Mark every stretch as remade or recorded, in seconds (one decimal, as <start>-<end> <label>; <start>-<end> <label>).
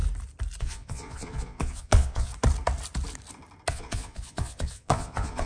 0.0-0.6 recorded; 0.6-2.3 remade; 2.3-3.7 recorded; 3.7-5.5 remade